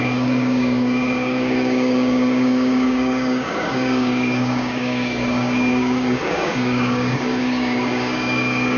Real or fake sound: fake